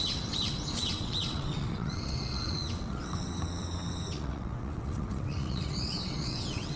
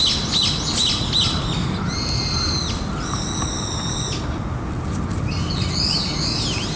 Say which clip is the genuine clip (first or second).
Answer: second